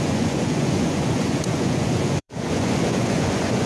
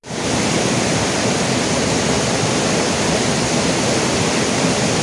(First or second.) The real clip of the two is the second